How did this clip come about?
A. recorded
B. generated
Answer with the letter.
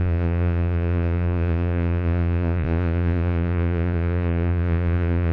B